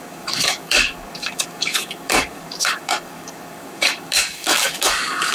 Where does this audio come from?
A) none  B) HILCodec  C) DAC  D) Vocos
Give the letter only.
C